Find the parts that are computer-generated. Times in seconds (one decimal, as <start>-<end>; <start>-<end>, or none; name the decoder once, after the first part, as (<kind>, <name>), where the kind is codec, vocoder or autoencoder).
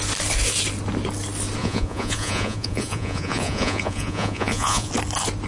1.6-4.9 (vocoder, Vocos)